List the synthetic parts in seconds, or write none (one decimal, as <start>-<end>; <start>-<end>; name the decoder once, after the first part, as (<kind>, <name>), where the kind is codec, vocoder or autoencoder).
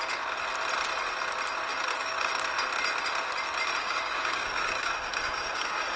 1.7-2.3 (codec, DAC); 3.8-6.0